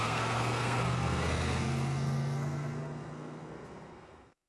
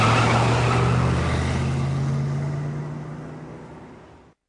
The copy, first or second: first